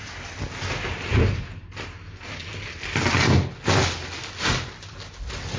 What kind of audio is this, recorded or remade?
recorded